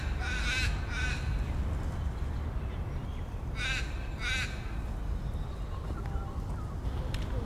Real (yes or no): yes